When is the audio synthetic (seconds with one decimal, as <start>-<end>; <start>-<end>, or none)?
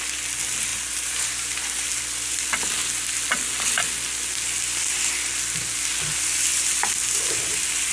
0.7-1.3